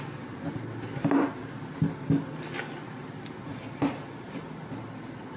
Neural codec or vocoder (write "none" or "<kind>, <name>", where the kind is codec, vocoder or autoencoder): none